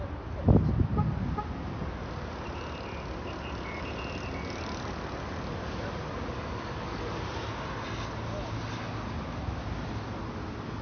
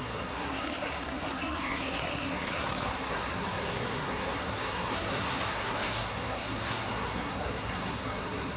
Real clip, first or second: first